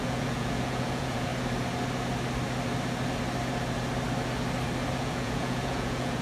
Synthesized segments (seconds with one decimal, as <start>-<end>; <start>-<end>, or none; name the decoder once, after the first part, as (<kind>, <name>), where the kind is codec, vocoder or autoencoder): 0.0-1.3 (vocoder, Vocos); 4.9-6.2